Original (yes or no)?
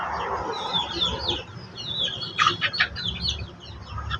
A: yes